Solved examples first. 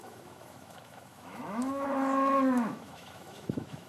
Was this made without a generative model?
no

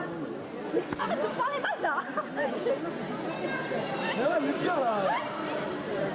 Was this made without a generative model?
yes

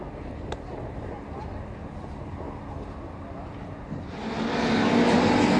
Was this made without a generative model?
yes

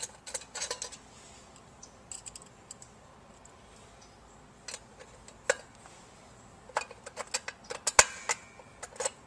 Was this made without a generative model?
yes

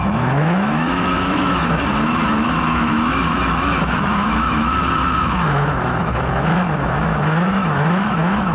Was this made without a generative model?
no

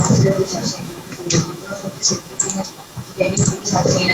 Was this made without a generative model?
no